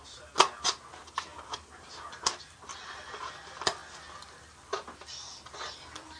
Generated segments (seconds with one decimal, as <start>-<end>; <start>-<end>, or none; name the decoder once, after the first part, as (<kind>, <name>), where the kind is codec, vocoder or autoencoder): 1.3-3.2 (vocoder, BigVGAN v2)